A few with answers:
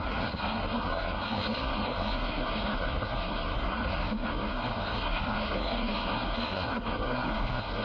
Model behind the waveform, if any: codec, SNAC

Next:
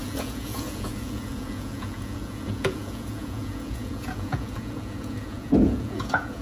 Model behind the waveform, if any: vocoder, Vocos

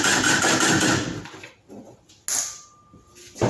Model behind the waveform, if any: none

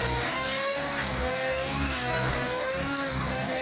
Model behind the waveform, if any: codec, DAC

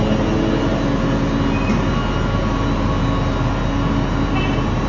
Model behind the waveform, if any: none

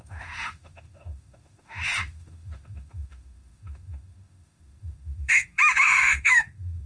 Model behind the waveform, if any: autoencoder, DAC-VAE